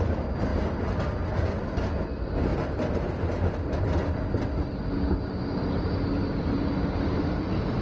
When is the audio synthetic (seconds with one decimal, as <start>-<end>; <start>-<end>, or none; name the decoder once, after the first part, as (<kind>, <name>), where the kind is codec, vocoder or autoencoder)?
none